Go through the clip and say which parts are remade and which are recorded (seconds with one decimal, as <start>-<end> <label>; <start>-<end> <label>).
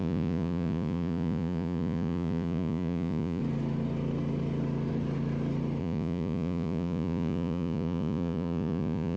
0.0-3.4 remade; 3.4-5.8 recorded; 5.8-9.2 remade